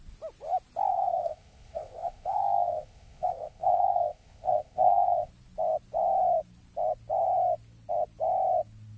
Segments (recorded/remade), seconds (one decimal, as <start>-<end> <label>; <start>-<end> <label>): 0.0-0.9 recorded; 0.9-5.3 remade; 5.3-9.0 recorded